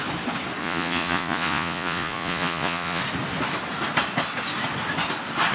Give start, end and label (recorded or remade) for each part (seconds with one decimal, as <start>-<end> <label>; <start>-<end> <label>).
0.0-0.6 recorded; 0.6-3.0 remade; 3.0-5.5 recorded